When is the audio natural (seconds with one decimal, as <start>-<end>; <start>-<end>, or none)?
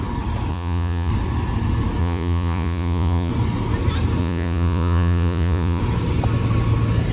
0.0-0.5; 1.1-2.0; 3.3-4.2; 5.8-7.1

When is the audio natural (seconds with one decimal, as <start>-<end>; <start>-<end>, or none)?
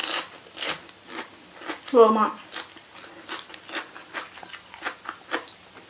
0.0-5.9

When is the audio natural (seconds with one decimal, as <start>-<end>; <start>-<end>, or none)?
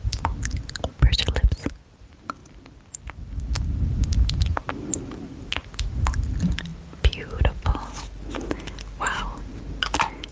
0.0-10.3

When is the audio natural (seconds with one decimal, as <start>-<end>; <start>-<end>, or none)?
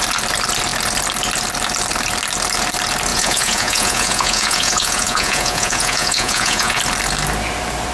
0.0-3.1; 6.8-7.9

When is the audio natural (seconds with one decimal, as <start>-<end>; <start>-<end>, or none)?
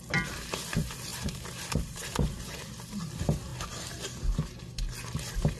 0.0-5.6